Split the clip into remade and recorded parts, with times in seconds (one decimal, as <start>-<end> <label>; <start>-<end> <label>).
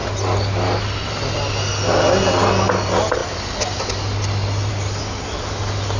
0.0-6.0 recorded